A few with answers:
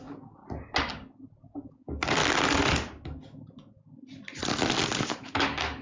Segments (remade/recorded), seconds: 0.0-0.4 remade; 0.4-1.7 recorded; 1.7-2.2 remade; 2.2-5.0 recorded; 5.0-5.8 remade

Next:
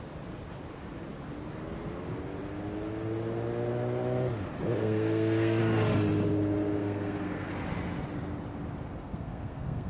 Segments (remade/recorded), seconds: 0.0-4.8 recorded; 4.8-5.6 remade; 5.6-6.8 recorded; 6.8-7.5 remade; 7.5-9.0 recorded; 9.0-9.9 remade